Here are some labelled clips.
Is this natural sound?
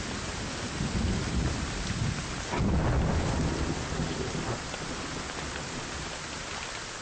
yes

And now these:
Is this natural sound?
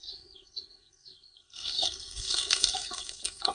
no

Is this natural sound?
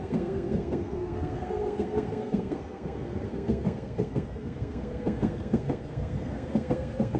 no